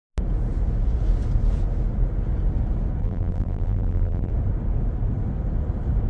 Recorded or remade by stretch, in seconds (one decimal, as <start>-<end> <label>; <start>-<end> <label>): 0.0-3.0 recorded; 3.0-4.3 remade; 4.3-6.1 recorded